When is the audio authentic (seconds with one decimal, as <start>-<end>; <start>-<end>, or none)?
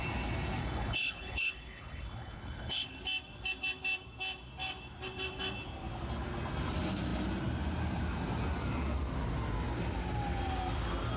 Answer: 0.0-0.6; 3.0-11.2